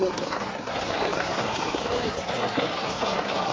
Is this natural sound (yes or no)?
no